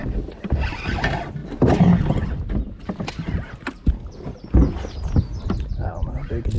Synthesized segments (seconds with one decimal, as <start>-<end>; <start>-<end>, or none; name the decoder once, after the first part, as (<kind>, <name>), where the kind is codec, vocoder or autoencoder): none